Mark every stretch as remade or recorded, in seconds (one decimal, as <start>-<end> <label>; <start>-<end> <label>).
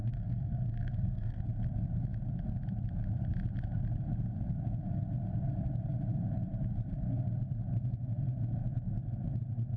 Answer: 0.0-1.4 remade; 1.4-9.8 recorded